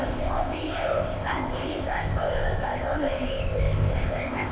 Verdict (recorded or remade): remade